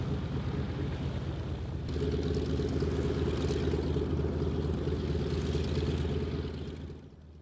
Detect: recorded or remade recorded